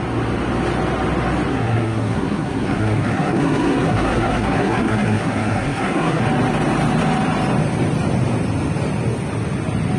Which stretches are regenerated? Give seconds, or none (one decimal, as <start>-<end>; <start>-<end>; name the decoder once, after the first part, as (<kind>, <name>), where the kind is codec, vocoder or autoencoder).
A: 1.5-6.2 (codec, SNAC)

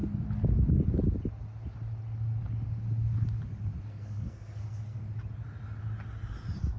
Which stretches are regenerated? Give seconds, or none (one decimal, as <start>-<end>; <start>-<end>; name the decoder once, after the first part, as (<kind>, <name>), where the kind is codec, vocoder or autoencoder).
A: 3.9-5.0 (codec, SNAC)

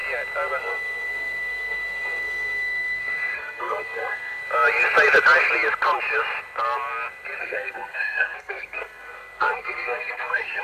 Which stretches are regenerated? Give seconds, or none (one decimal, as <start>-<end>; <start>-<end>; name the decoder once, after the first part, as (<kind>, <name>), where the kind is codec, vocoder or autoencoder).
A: 0.6-4.4 (codec, SNAC); 7.4-10.6

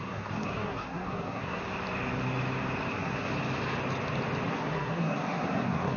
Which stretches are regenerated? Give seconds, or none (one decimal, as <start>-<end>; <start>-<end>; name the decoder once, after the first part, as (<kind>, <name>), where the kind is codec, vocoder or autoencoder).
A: 0.0-1.6 (codec, SNAC); 2.9-3.3; 4.5-6.0

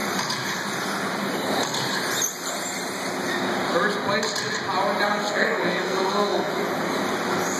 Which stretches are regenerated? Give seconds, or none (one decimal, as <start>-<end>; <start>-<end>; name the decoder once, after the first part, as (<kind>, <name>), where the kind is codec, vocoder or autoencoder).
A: 5.2-6.5 (codec, SNAC)

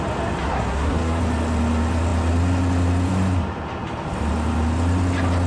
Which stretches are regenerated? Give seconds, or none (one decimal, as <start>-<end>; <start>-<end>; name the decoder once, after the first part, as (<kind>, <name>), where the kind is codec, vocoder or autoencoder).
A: 0.4-1.2 (codec, SNAC)